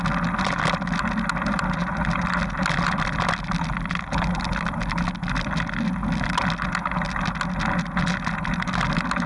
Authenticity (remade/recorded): recorded